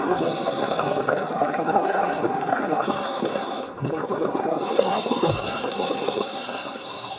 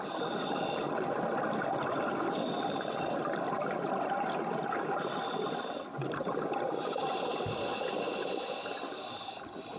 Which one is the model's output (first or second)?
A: first